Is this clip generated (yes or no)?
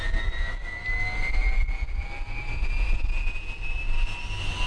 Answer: no